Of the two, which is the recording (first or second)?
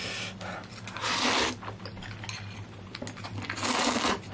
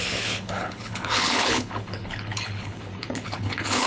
first